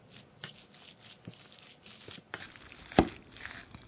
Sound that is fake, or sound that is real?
real